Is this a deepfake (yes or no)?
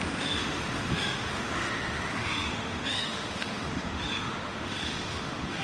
yes